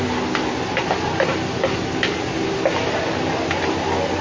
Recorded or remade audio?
recorded